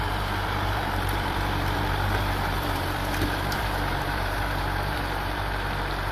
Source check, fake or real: fake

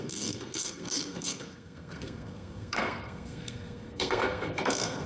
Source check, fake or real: fake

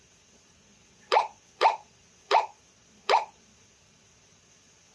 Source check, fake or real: fake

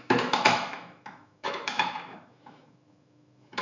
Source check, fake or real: fake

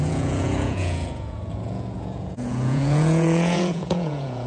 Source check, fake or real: fake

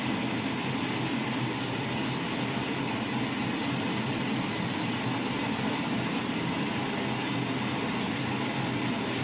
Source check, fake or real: real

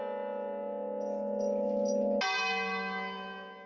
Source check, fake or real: real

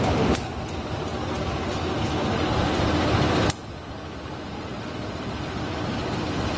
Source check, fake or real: real